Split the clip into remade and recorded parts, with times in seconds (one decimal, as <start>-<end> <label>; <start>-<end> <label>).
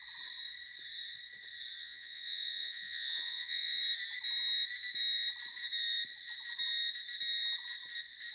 0.0-1.8 recorded; 1.8-3.8 remade; 3.8-8.3 recorded